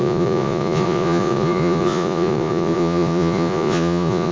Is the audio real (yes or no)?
no